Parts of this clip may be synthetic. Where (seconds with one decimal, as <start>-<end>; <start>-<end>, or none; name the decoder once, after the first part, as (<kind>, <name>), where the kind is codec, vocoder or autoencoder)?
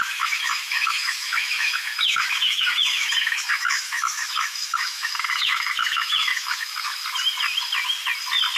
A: 0.0-6.9 (autoencoder, DAC-VAE)